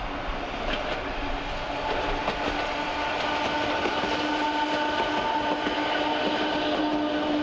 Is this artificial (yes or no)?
no